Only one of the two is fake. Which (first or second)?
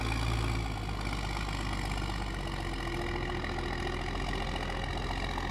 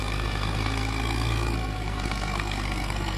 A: second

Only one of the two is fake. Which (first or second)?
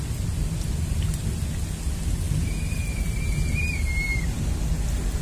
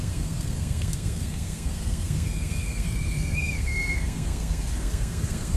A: second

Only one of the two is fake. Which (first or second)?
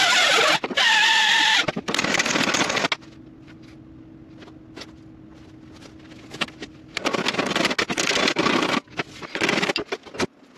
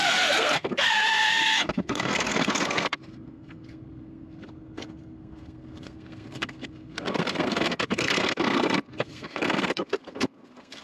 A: second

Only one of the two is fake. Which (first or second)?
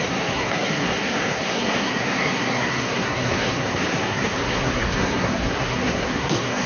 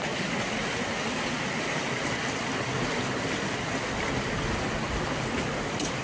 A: first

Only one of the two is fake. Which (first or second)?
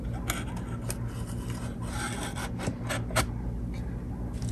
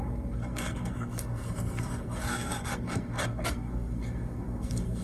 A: second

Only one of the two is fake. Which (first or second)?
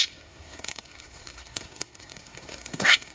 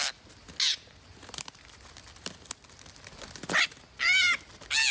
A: first